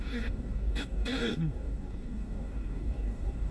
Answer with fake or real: fake